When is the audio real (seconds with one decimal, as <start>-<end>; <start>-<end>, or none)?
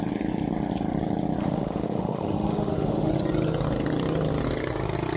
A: 0.0-1.4; 3.1-5.2